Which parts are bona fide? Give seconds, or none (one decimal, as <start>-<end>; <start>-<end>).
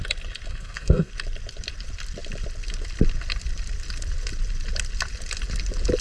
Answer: 0.0-0.5; 1.1-6.0